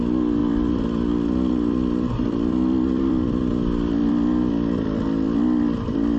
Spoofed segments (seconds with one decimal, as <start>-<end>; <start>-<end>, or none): 0.4-4.1

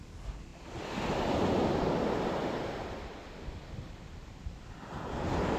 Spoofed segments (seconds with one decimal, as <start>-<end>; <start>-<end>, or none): none

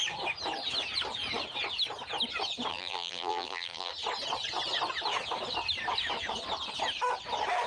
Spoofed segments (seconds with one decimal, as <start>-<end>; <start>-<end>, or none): 2.7-3.9

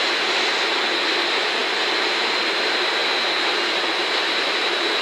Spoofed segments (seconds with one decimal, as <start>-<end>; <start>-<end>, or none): none